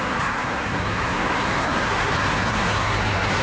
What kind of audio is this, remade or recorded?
remade